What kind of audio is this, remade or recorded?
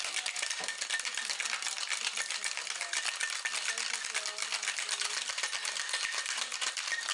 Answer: recorded